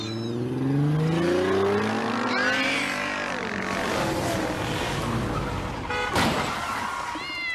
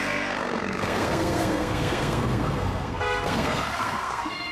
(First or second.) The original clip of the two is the first